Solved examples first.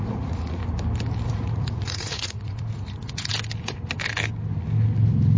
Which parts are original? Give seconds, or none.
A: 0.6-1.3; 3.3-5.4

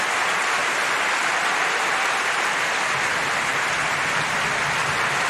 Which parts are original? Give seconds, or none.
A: 0.0-0.6; 2.6-3.5; 4.3-5.3

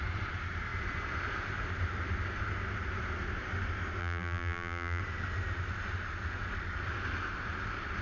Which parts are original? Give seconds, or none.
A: 0.0-4.0; 5.0-8.0

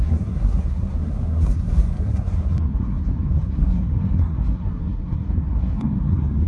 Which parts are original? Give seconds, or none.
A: none

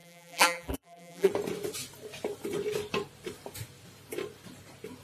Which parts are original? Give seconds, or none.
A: 1.3-5.0